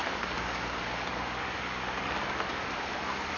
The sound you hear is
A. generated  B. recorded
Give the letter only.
A